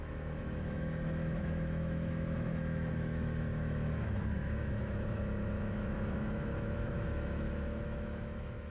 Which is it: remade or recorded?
remade